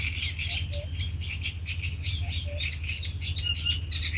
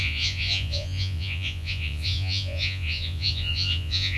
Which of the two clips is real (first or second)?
first